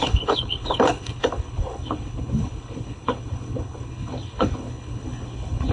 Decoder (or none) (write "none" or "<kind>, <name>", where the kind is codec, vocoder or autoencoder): codec, HILCodec